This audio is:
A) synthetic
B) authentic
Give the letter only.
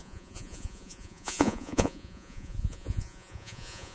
A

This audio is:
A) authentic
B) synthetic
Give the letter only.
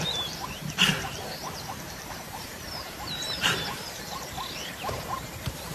B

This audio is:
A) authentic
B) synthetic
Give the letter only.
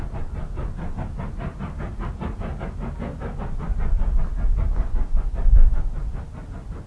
A